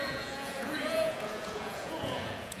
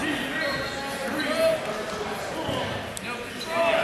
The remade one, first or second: first